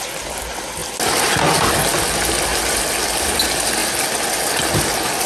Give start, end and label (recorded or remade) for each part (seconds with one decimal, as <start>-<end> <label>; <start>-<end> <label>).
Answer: 0.0-5.3 recorded